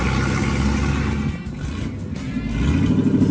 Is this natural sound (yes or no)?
yes